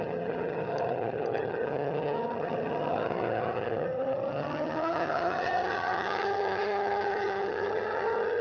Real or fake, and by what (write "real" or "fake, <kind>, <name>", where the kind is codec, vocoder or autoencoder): fake, vocoder, HiFi-GAN